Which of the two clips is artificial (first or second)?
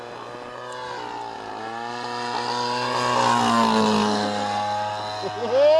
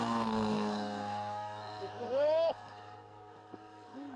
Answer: second